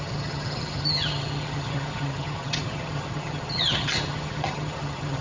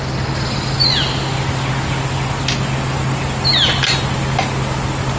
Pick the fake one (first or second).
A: first